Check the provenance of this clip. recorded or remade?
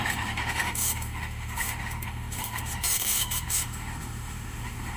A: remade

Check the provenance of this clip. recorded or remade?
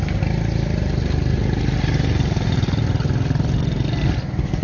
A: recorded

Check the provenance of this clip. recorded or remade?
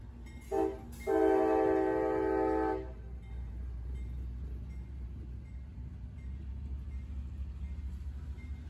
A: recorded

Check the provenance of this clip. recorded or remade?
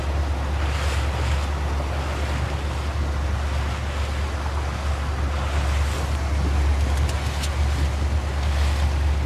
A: recorded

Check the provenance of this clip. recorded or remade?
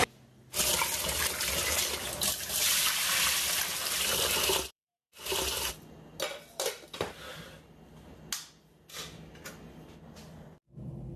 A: recorded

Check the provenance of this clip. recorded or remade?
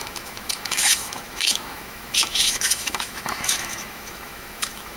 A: remade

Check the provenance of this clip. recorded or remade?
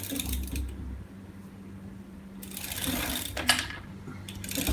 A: recorded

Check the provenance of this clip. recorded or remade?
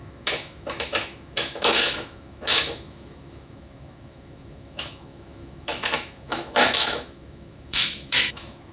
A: remade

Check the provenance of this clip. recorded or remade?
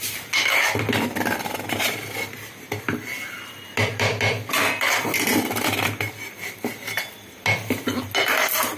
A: recorded